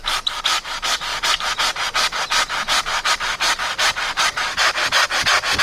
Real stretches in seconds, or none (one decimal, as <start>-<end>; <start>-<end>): none